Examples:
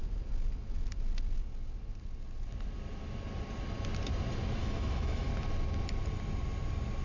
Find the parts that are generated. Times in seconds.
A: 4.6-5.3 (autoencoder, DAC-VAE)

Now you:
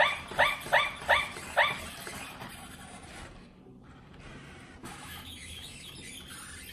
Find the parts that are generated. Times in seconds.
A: 4.8-5.9 (autoencoder, DAC-VAE)

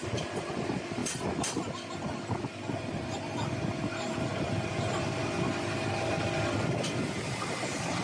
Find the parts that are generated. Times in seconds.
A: none

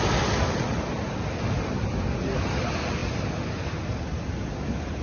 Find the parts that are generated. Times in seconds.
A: none

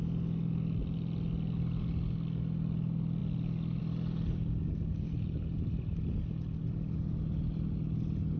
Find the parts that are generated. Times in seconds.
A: none

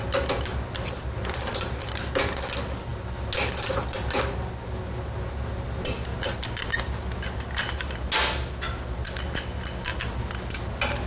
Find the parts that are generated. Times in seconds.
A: none

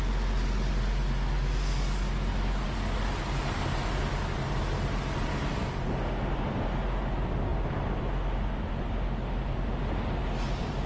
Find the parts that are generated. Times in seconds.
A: none

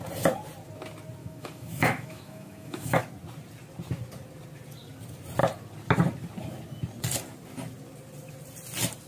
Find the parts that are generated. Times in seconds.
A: 1.2-3.0 (autoencoder, DAC-VAE)